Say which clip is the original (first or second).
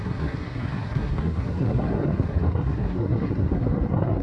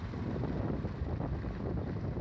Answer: second